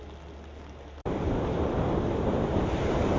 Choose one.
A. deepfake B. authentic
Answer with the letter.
B